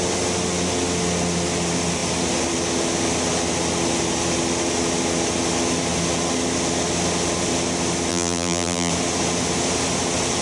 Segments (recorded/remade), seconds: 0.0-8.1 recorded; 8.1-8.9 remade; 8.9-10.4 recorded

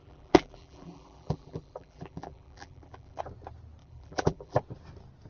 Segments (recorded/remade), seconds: 0.0-3.2 remade; 3.2-3.8 recorded; 3.8-4.6 remade; 4.6-5.3 recorded

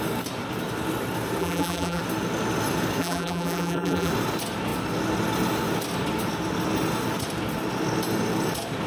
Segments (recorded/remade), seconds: 0.0-1.4 recorded; 1.4-2.0 remade; 2.0-3.0 recorded; 3.0-4.1 remade; 4.1-8.9 recorded

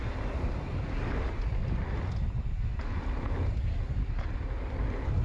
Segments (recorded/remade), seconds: 0.0-5.2 recorded